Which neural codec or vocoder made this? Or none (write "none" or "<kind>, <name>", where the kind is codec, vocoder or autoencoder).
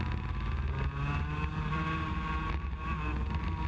none